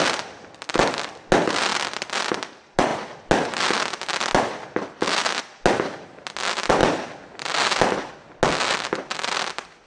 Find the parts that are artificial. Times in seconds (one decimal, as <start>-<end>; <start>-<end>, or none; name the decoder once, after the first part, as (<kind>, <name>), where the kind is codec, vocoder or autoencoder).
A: none